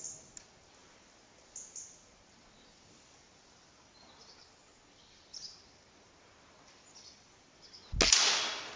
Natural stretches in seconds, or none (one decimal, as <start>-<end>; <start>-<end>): 0.0-8.8